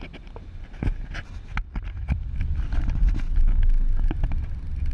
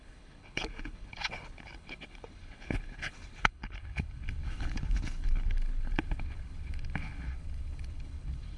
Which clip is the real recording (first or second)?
first